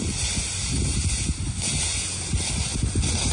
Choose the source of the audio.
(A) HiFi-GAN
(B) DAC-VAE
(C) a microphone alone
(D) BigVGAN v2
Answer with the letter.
C